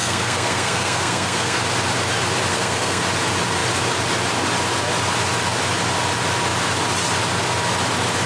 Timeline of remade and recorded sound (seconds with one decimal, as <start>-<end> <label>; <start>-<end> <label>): 0.0-1.6 remade; 1.6-2.5 recorded; 2.5-3.0 remade; 3.0-8.3 recorded